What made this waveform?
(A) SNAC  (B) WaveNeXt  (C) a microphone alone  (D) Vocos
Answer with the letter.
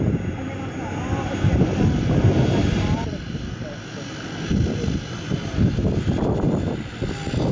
C